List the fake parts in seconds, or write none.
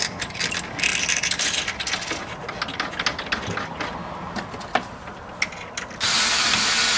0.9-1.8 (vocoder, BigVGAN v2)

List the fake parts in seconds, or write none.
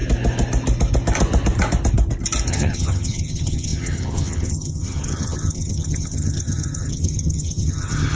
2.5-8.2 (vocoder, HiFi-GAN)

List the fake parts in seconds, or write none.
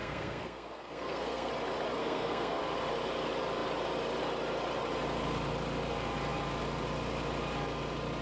0.0-1.5 (codec, SNAC); 2.0-2.6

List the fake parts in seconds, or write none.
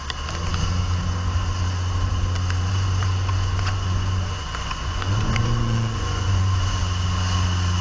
2.7-6.8 (vocoder, Vocos)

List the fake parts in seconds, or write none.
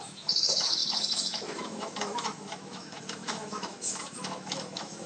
0.0-5.1 (autoencoder, DAC-VAE)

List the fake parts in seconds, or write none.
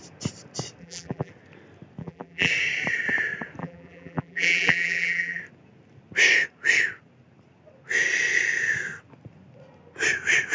0.8-1.3 (vocoder, BigVGAN v2); 2.0-2.5; 3.6-5.4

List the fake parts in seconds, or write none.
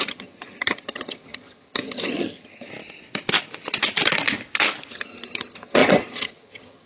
0.0-2.7 (vocoder, HiFi-GAN); 4.9-6.9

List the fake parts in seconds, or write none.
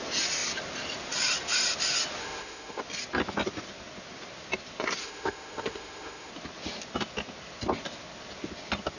2.2-2.8 (autoencoder, DAC-VAE); 5.0-6.3